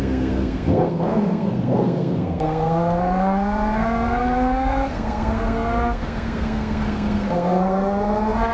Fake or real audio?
fake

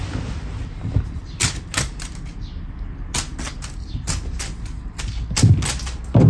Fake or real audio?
real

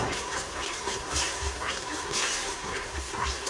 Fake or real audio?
fake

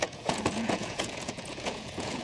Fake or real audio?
fake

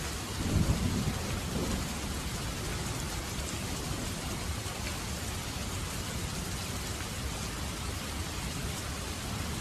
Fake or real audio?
real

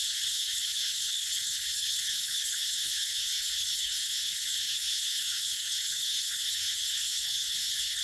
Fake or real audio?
fake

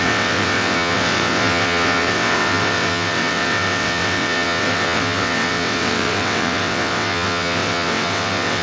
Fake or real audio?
fake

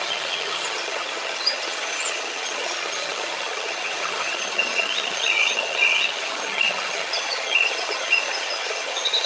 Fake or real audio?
fake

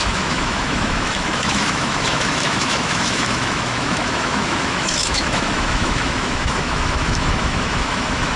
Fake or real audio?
fake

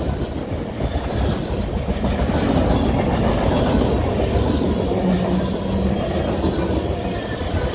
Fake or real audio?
real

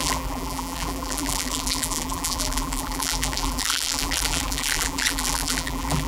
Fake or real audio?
fake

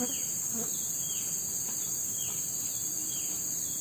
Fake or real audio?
real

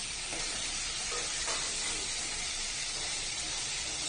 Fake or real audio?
real